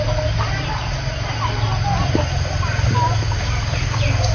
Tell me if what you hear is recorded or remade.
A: recorded